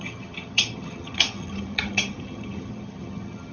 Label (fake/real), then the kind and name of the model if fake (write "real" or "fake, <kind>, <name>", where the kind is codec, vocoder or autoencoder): fake, vocoder, HiFi-GAN